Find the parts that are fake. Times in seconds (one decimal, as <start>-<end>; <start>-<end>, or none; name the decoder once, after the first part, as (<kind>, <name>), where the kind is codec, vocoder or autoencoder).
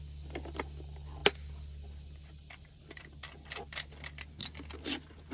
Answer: none